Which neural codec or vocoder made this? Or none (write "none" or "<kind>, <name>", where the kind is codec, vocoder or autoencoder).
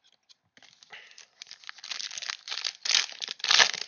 none